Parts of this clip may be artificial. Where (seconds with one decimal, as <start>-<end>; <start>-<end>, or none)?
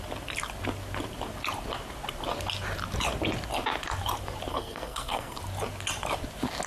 4.5-5.4